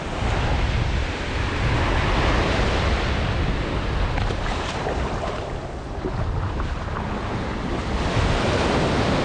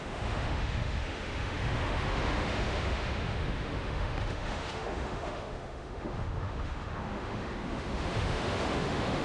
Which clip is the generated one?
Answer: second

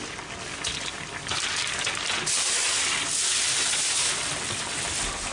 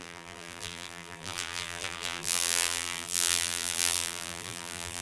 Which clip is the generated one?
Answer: second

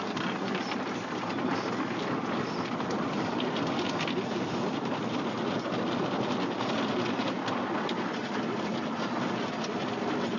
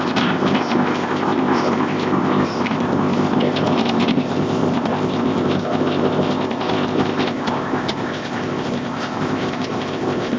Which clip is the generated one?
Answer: second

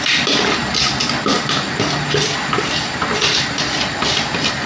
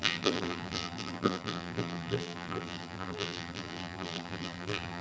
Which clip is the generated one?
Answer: second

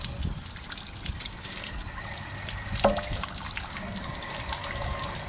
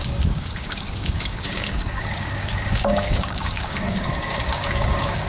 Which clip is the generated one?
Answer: second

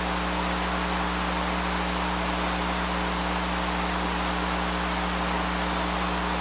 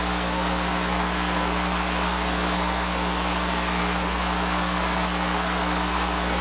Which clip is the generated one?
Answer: second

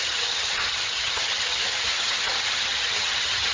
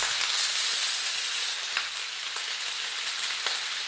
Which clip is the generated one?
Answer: first